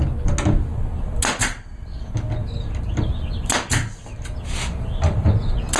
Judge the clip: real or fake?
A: real